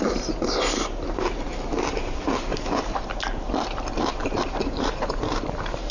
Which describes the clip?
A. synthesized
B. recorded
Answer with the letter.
A